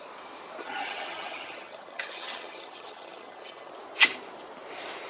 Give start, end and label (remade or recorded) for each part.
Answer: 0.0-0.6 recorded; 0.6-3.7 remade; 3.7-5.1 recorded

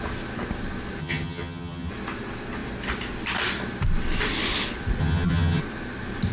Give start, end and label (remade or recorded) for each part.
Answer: 0.0-1.0 recorded; 1.0-1.9 remade; 1.9-5.0 recorded; 5.0-5.6 remade; 5.6-6.3 recorded

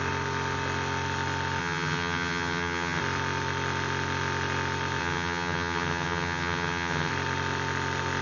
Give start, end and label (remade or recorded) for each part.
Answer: 0.0-1.6 recorded; 1.6-3.0 remade; 3.0-5.0 recorded; 5.0-7.1 remade; 7.1-8.2 recorded

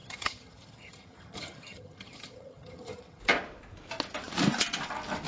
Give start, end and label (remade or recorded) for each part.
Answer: 0.0-3.2 remade; 3.2-5.3 recorded

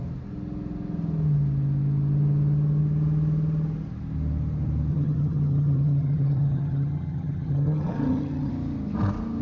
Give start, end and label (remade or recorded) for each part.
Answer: 0.0-4.9 recorded; 4.9-8.5 remade; 8.5-9.4 recorded

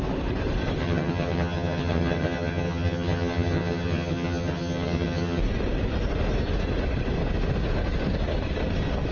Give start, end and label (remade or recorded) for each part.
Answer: 0.0-0.8 recorded; 0.8-5.4 remade; 5.4-9.1 recorded

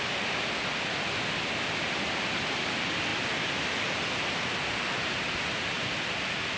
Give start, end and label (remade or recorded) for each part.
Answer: 0.0-6.6 recorded

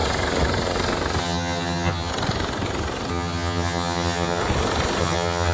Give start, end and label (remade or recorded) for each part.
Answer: 0.0-1.2 recorded; 1.2-2.1 remade; 2.1-3.1 recorded; 3.1-4.4 remade; 4.4-5.0 recorded; 5.0-5.5 remade